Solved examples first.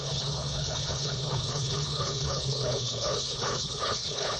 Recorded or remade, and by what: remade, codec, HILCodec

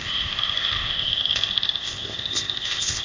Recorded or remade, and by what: remade, codec, ZipCodec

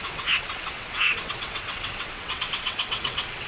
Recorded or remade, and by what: remade, vocoder, WaveNeXt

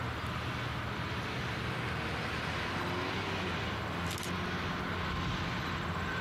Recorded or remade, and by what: recorded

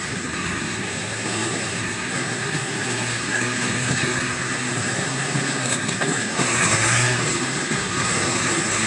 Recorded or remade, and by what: remade, codec, SNAC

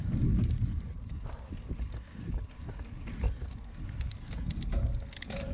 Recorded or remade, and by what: recorded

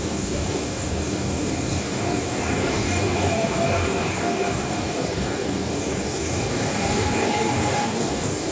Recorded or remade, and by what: remade, codec, DAC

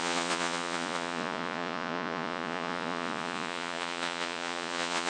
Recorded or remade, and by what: remade, vocoder, Vocos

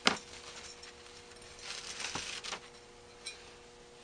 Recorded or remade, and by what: recorded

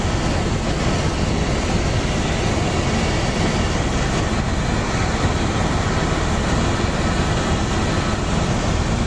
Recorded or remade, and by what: recorded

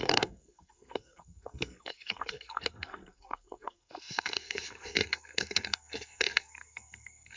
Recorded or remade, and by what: remade, codec, SNAC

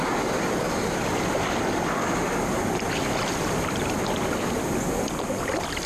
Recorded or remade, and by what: recorded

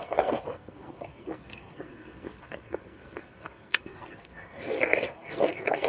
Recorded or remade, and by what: remade, codec, SNAC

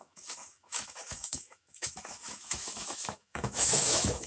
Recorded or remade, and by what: remade, autoencoder, DAC-VAE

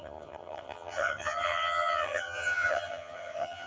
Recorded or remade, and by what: remade, vocoder, HiFi-GAN